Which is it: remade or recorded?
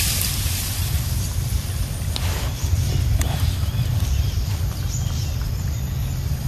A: remade